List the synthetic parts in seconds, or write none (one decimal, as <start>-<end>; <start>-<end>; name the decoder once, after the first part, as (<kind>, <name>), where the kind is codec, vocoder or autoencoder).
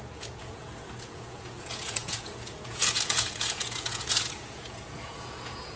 0.0-5.8 (vocoder, Vocos)